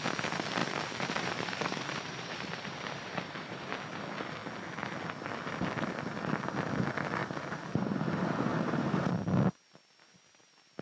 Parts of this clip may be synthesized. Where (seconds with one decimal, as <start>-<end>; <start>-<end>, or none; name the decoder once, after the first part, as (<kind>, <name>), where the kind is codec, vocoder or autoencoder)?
0.6-3.7 (vocoder, BigVGAN v2); 7.2-7.9; 8.5-9.1